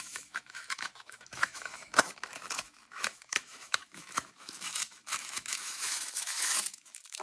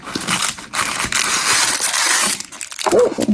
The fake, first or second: first